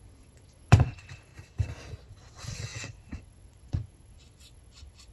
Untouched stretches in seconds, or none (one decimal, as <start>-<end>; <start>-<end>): 1.3-2.1